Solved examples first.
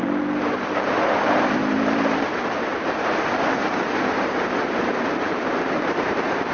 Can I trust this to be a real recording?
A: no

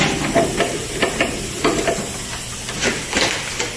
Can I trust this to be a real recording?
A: no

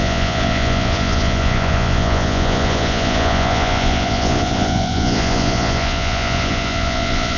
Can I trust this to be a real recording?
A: no